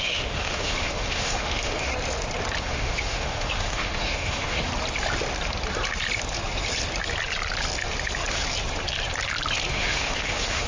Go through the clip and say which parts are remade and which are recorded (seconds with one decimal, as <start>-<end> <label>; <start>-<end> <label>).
0.0-1.9 remade; 1.9-2.6 recorded; 2.6-4.7 remade; 4.7-9.7 recorded; 9.7-10.7 remade